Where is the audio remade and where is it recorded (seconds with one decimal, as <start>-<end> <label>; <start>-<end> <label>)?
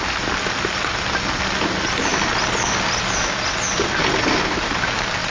0.0-5.3 recorded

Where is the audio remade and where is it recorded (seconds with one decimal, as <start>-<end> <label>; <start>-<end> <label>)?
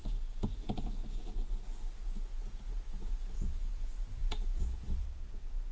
0.0-5.7 remade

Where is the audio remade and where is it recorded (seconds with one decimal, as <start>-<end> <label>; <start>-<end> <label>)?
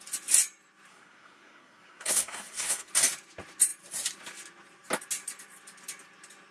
0.0-0.9 recorded; 0.9-2.9 remade; 2.9-6.5 recorded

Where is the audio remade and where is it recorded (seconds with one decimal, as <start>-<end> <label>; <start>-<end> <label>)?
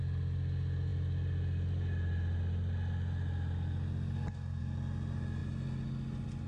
0.0-6.5 recorded